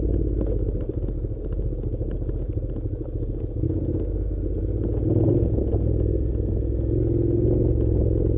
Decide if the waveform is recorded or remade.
recorded